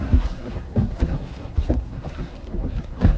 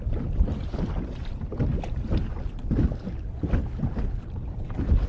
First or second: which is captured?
second